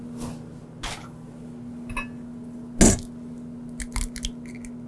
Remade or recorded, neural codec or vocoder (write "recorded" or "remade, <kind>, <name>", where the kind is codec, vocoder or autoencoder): recorded